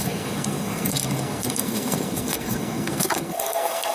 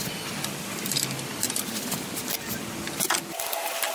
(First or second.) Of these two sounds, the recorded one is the second